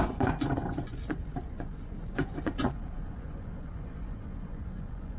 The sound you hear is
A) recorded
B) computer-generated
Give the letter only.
B